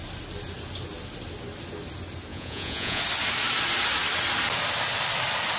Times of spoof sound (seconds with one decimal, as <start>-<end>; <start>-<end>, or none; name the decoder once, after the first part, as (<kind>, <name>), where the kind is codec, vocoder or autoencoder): 2.3-3.0 (vocoder, Vocos)